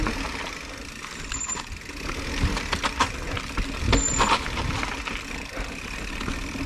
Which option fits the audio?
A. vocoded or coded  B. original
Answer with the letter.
B